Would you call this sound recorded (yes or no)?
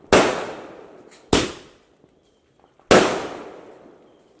yes